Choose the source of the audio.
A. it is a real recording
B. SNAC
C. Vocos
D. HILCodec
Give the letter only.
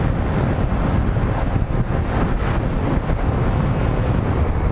A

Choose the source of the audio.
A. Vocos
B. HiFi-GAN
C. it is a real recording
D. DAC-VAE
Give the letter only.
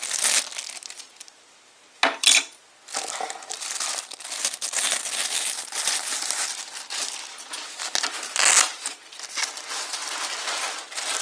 C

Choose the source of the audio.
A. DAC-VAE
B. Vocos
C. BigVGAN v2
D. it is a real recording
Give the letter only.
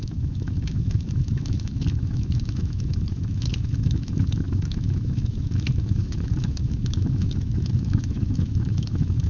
A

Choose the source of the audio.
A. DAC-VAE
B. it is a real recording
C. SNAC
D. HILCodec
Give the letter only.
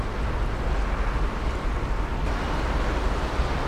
B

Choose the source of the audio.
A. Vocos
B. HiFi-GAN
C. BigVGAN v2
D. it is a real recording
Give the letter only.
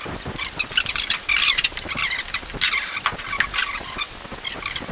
D